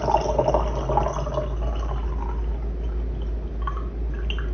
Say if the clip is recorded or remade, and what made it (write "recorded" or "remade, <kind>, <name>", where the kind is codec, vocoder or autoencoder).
recorded